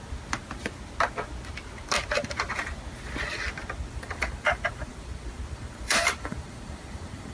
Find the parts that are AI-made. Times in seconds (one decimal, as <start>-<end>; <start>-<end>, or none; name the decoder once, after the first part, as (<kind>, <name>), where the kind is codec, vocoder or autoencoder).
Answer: 3.9-7.3 (vocoder, BigVGAN v2)